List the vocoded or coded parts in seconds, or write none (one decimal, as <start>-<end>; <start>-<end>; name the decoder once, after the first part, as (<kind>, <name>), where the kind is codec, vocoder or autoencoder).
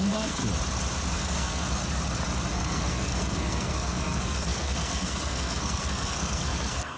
0.0-0.4 (codec, SNAC); 1.1-1.8; 2.5-7.0